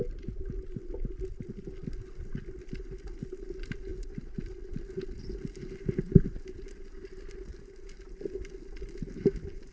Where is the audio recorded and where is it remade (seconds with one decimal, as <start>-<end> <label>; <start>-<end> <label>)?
0.0-9.7 recorded

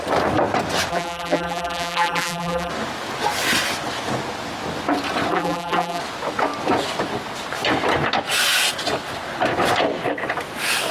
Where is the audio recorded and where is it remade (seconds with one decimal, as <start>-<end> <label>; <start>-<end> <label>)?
0.0-0.9 recorded; 0.9-2.7 remade; 2.7-5.3 recorded; 5.3-6.0 remade; 6.0-10.9 recorded

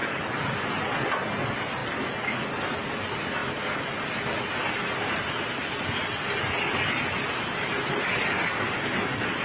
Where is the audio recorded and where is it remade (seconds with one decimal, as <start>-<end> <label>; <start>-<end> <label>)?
0.0-9.4 recorded

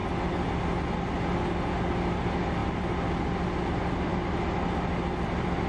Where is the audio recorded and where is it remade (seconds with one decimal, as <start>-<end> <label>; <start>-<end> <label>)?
0.0-5.7 recorded